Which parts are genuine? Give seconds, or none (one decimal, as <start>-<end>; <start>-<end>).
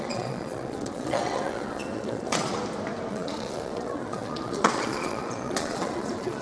2.5-3.1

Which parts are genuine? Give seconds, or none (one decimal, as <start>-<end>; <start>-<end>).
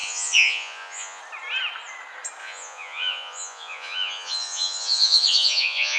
1.2-2.4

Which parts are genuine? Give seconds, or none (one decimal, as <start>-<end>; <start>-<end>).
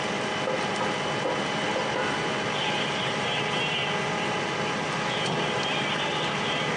0.0-6.8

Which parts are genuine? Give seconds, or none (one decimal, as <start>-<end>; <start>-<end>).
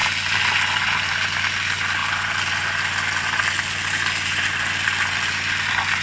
0.0-6.0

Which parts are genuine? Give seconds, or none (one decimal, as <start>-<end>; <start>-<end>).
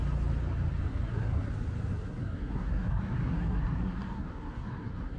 0.0-0.9; 1.5-1.9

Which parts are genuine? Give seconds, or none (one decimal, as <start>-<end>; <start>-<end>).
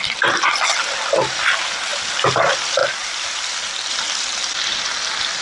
0.0-5.4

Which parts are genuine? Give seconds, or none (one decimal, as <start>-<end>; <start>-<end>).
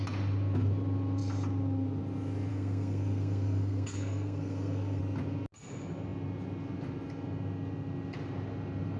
0.0-2.5; 5.0-9.0